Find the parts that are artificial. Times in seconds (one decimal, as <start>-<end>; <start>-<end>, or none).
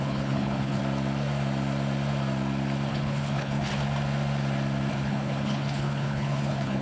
0.0-0.8; 2.9-3.7; 4.9-6.8